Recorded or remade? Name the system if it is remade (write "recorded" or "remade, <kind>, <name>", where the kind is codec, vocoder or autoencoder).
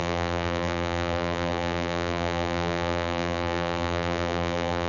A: remade, vocoder, BigVGAN v2